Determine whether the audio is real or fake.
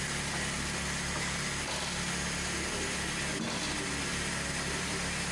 real